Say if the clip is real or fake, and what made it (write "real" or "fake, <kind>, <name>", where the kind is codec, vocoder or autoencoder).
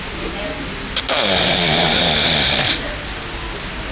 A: real